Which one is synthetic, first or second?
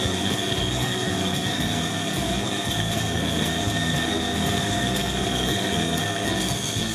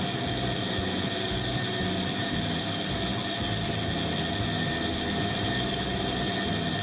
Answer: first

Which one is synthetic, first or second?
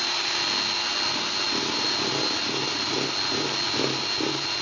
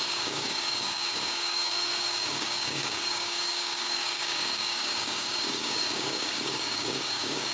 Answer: second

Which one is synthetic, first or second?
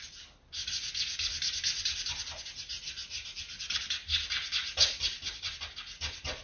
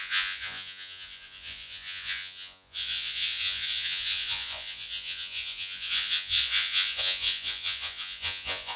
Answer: second